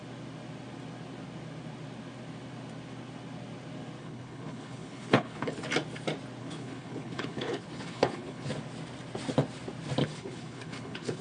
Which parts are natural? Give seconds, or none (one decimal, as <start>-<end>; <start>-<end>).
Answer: 0.0-4.0; 5.6-6.4; 8.5-10.0